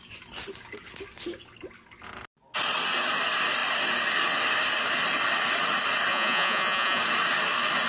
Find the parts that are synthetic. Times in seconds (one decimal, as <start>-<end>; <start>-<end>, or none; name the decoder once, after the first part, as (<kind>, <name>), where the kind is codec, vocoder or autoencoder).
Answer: 6.1-7.0 (vocoder, Vocos)